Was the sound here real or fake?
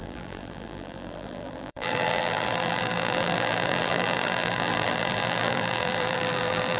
fake